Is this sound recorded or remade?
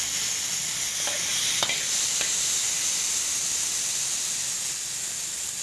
recorded